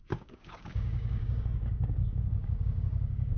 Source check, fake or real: fake